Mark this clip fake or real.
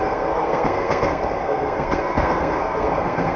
fake